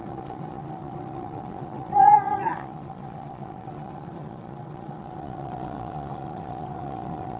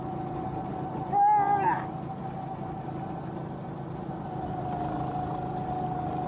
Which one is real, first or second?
second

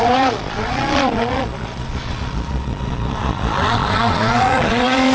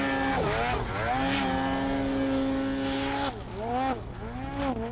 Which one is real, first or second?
second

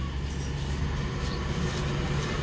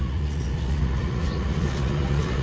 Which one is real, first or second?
first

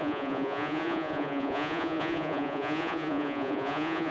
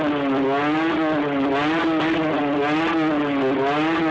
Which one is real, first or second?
second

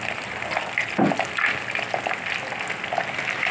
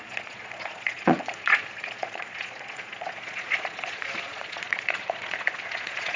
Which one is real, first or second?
first